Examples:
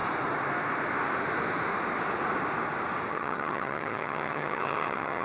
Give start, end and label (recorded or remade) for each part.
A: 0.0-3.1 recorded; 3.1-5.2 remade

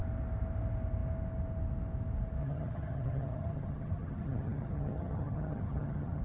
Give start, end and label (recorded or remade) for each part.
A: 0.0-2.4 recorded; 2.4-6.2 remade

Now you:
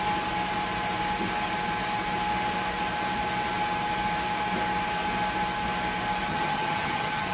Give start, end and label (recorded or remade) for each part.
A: 0.0-6.3 recorded; 6.3-7.3 remade

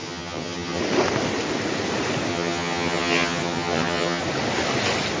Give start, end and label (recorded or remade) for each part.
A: 0.0-0.8 remade; 0.8-2.3 recorded; 2.3-4.2 remade; 4.2-5.2 recorded